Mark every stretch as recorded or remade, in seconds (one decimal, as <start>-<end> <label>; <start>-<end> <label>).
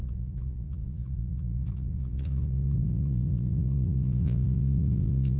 0.0-5.4 remade